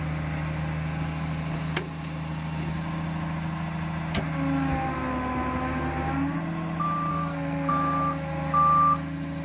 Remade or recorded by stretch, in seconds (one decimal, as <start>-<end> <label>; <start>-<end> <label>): 0.0-7.1 recorded; 7.1-7.7 remade; 7.7-9.4 recorded